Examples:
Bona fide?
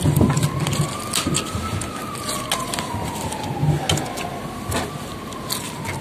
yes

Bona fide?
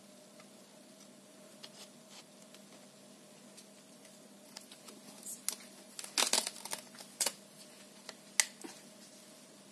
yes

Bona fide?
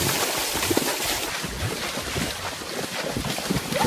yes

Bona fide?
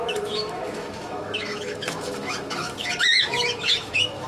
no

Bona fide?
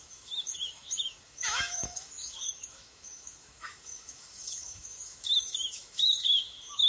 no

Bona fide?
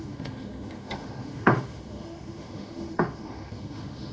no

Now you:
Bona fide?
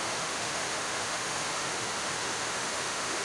no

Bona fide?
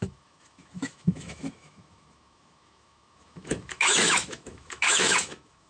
no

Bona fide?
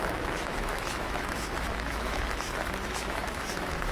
no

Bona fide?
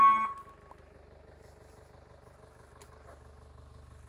yes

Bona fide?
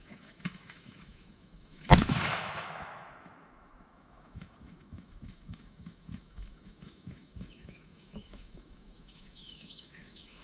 no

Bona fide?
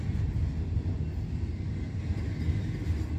yes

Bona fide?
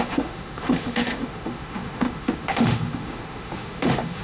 no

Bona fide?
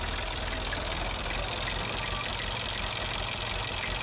yes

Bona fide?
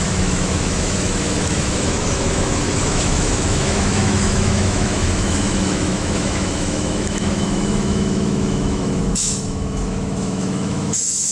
no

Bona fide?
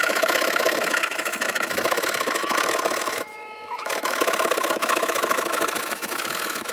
no